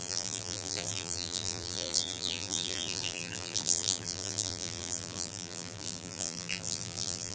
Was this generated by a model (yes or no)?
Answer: yes